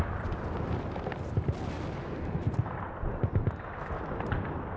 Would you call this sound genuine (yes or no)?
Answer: no